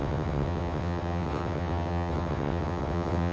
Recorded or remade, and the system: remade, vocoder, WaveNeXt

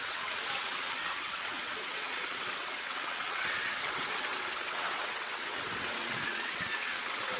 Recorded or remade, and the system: remade, vocoder, WaveNeXt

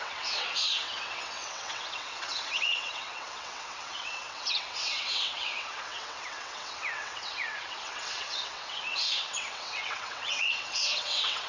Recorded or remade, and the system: remade, vocoder, WaveNeXt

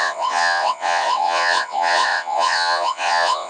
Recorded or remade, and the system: remade, vocoder, WaveNeXt